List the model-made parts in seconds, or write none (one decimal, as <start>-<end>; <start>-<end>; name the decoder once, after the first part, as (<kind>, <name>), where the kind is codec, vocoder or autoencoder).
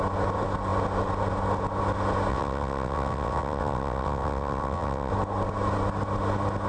2.3-5.1 (vocoder, WaveNeXt)